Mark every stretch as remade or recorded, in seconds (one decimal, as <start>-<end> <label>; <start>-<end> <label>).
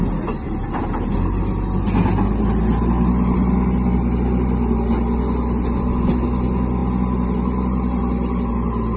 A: 0.0-9.0 recorded